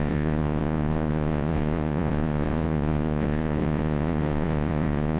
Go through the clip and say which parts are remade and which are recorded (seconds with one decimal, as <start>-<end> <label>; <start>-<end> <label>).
0.0-5.2 remade